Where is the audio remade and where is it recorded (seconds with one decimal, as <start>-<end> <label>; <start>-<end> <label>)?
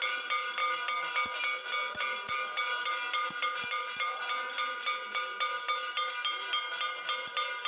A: 0.0-7.7 recorded